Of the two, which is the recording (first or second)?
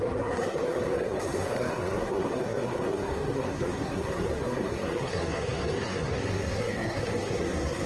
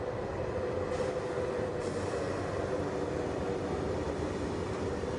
second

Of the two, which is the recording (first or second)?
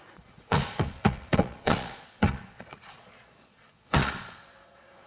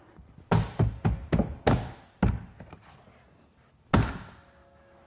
second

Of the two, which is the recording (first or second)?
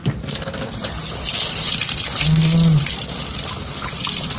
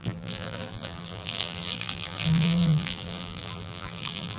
first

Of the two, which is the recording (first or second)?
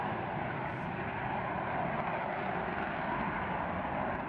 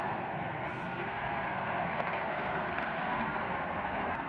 first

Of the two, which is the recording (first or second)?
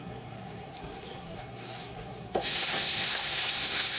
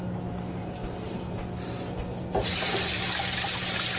second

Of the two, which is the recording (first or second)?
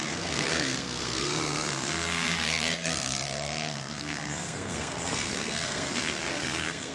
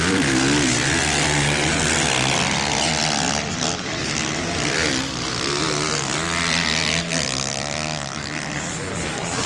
second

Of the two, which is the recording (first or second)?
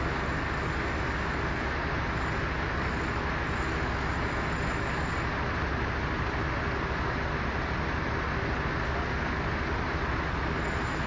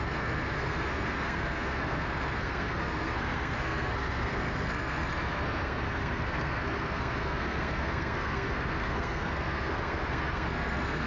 first